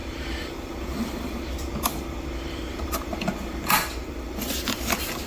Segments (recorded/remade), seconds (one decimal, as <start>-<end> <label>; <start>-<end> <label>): 0.0-1.5 remade; 1.5-1.9 recorded; 1.9-5.3 remade